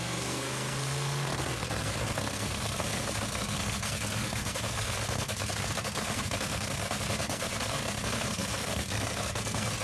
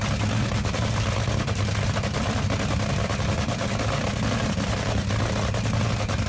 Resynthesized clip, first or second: first